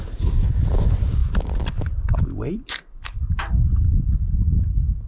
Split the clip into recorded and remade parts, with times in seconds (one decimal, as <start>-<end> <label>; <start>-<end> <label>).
0.0-5.1 recorded